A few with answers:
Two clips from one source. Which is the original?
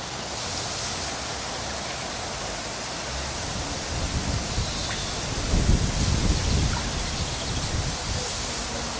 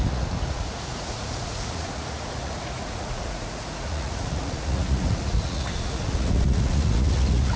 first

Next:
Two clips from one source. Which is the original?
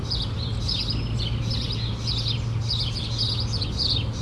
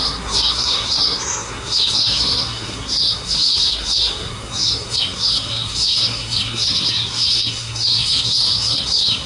first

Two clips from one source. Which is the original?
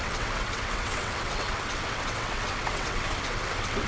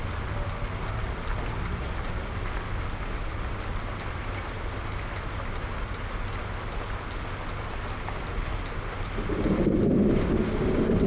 second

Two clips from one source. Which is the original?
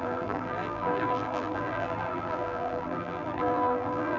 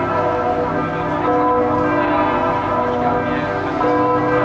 second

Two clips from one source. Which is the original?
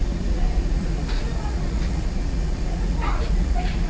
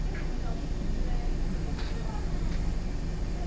second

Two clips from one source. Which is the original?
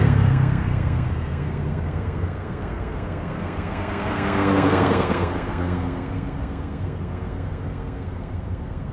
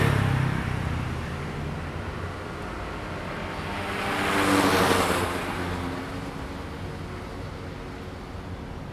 second